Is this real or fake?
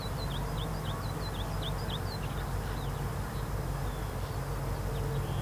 real